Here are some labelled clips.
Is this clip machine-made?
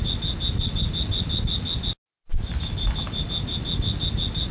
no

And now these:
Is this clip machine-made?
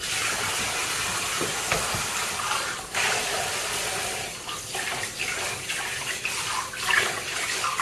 no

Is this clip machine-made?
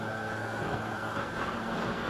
yes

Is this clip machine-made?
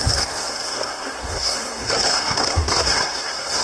yes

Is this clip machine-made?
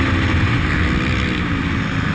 no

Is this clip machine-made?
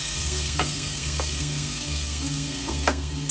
yes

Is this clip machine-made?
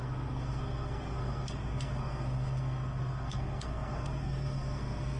yes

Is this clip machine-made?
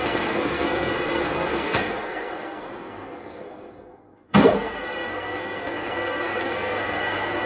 yes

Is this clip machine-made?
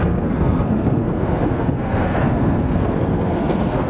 yes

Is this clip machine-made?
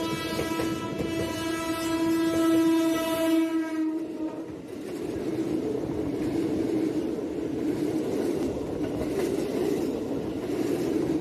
no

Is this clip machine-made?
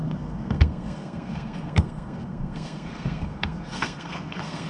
yes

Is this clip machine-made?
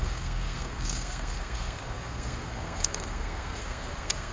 yes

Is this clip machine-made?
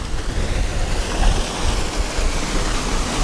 no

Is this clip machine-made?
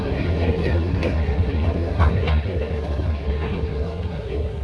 yes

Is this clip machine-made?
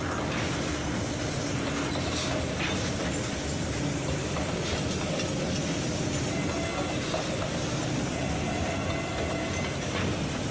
no